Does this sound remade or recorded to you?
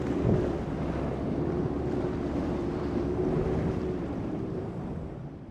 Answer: remade